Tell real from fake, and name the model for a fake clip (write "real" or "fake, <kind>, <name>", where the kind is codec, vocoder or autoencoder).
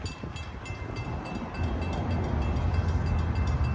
real